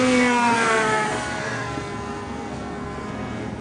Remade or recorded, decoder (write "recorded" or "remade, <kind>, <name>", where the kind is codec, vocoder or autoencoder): remade, codec, SNAC